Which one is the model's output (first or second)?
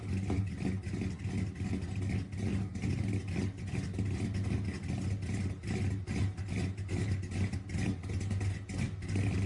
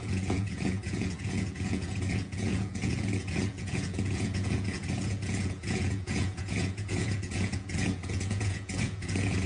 second